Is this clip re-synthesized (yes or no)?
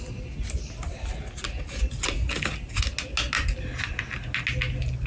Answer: no